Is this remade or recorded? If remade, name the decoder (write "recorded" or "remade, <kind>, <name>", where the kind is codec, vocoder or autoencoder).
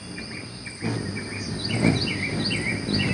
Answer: recorded